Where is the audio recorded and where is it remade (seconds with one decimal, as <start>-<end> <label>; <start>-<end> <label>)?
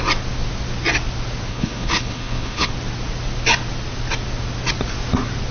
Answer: 0.0-1.5 recorded; 1.5-2.7 remade; 2.7-5.5 recorded